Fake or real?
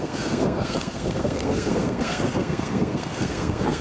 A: fake